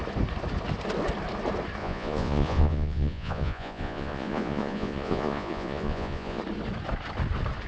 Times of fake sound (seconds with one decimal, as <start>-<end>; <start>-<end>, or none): 1.8-6.4